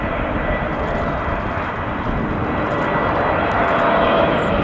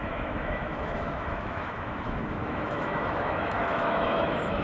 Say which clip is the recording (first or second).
first